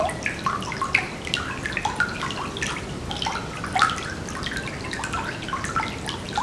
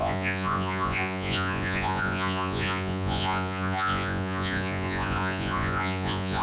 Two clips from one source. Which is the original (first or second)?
first